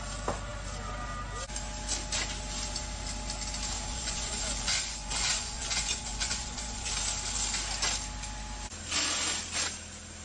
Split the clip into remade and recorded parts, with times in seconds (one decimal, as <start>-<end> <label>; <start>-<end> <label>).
0.0-3.9 recorded; 3.9-6.9 remade; 6.9-10.2 recorded